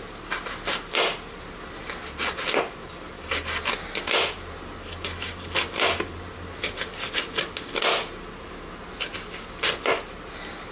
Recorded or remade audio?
recorded